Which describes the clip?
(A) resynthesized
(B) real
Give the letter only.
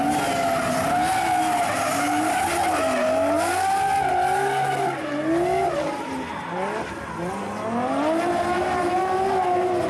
B